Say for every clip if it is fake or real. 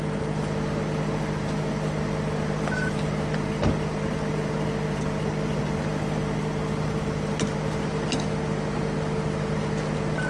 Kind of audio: real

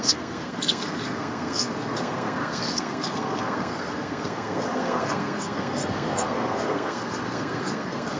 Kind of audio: fake